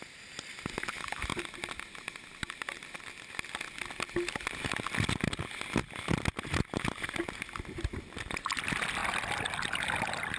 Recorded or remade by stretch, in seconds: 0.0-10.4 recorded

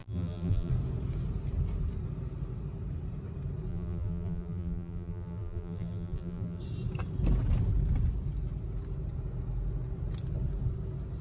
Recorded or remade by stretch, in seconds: 0.0-0.7 remade; 0.7-3.7 recorded; 3.7-6.6 remade; 6.6-11.2 recorded

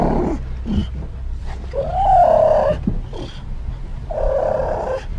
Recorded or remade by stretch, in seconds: 0.0-3.9 recorded; 3.9-5.2 remade

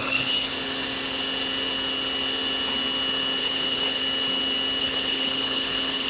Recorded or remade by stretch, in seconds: 0.0-0.5 remade; 0.5-3.4 recorded; 3.4-4.0 remade; 4.0-4.8 recorded; 4.8-6.1 remade

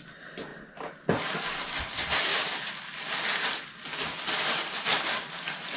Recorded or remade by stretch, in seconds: 0.0-5.8 recorded

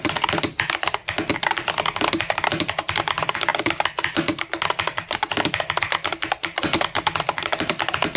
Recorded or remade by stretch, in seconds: 0.0-8.2 recorded